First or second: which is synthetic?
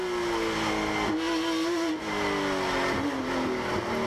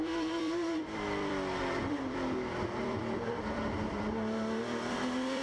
second